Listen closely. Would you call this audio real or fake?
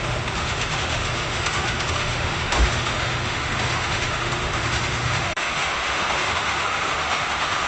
fake